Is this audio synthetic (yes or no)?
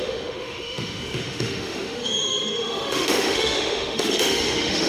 yes